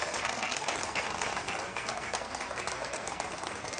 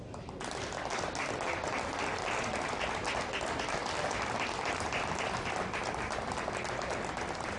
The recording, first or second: second